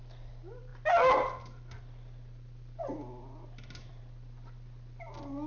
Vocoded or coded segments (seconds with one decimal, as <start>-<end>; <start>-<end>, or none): none

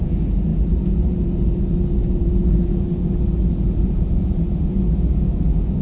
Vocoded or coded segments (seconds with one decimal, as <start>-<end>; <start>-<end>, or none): 0.0-5.8

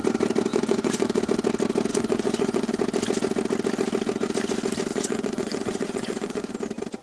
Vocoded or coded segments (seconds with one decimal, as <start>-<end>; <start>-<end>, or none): 0.5-1.2; 1.9-2.7; 4.9-6.5

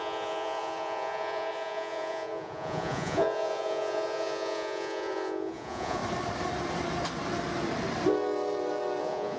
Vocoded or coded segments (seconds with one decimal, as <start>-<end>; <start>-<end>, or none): 0.0-6.0; 9.0-9.4

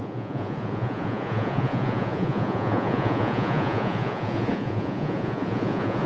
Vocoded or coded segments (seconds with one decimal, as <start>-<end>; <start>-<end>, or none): 0.0-6.1

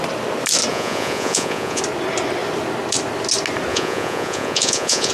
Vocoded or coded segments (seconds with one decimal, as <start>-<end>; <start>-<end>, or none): 0.7-1.8; 3.7-5.1

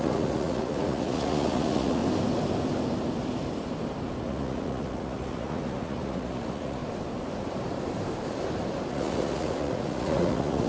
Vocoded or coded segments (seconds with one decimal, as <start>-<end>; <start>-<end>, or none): 0.0-2.0; 4.2-6.8; 8.9-10.7